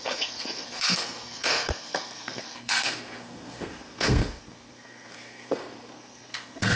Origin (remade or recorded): remade